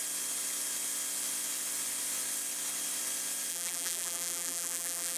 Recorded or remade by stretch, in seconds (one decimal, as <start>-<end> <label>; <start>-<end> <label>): 0.0-3.5 recorded; 3.5-5.2 remade